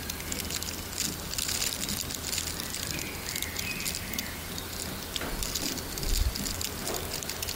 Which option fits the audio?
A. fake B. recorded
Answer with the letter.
B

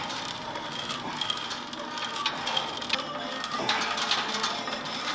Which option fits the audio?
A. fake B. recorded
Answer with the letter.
B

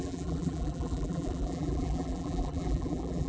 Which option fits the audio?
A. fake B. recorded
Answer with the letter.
A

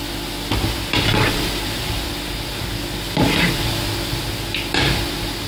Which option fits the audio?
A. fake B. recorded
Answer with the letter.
B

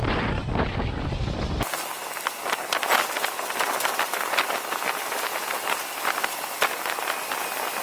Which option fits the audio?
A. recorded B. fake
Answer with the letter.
A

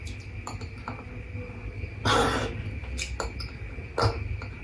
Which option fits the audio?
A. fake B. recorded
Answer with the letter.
B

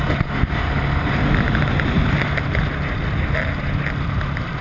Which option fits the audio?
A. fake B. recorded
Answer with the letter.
B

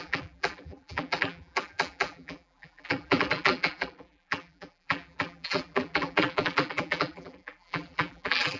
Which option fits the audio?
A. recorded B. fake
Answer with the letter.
B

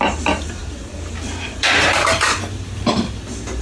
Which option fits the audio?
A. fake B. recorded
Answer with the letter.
A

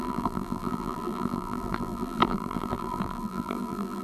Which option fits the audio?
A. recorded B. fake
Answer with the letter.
B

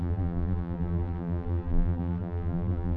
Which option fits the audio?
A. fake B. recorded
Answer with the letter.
A